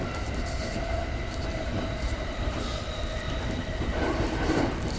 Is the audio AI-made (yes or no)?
yes